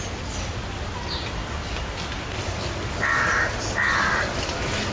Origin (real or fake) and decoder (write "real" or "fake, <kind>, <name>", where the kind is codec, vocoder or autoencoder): real